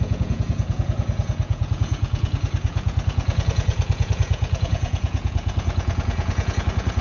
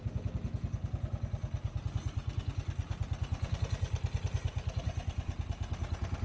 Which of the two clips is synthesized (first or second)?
first